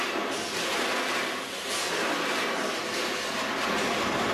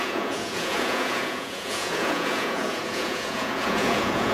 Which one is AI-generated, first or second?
second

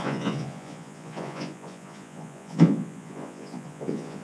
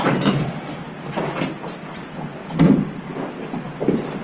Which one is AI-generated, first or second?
first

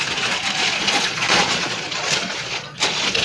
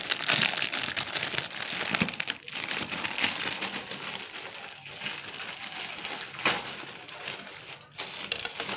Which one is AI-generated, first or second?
first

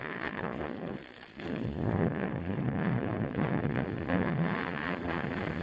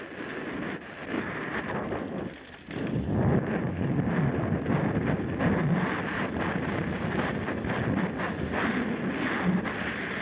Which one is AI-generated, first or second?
first